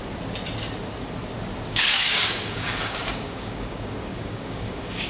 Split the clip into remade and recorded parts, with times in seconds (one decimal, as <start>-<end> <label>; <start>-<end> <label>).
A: 0.0-1.7 recorded; 1.7-5.1 remade